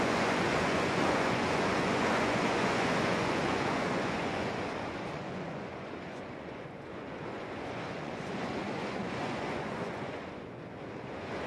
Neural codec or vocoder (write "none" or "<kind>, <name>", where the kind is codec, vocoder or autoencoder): vocoder, Vocos